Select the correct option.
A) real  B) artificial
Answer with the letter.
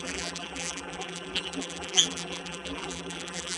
B